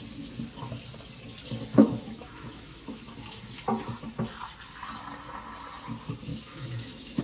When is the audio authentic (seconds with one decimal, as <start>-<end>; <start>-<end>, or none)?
0.0-1.7; 3.4-6.3